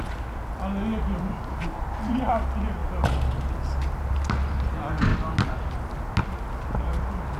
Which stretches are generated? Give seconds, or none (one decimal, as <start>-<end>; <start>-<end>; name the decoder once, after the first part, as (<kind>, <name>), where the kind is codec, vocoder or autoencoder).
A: none